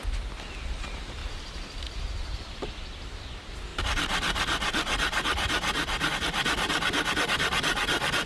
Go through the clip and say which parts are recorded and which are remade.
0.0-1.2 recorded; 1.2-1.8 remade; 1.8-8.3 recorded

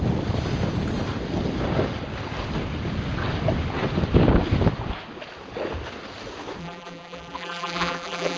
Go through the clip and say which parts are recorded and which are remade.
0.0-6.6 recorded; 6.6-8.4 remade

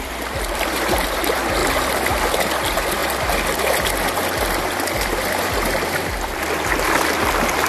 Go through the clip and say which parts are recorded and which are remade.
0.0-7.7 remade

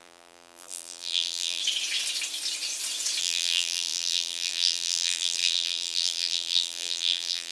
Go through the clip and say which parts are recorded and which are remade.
0.0-1.6 remade; 1.6-3.2 recorded; 3.2-7.5 remade

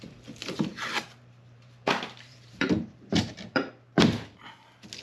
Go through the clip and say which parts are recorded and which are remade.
0.0-0.7 recorded; 0.7-3.7 remade; 3.7-5.0 recorded

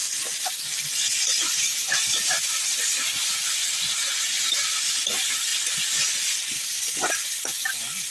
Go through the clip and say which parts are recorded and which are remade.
0.0-8.1 recorded

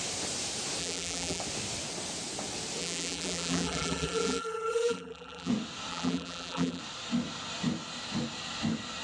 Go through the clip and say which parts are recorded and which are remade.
0.0-0.8 recorded; 0.8-1.4 remade; 1.4-2.8 recorded; 2.8-5.5 remade; 5.5-5.9 recorded; 5.9-6.8 remade; 6.8-9.0 recorded